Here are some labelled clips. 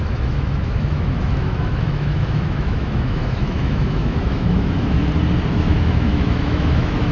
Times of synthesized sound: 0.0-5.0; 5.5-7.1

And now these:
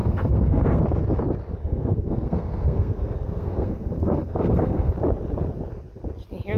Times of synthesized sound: 0.0-0.8; 1.6-4.9

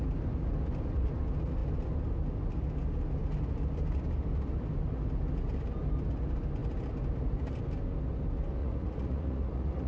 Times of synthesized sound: 8.6-9.9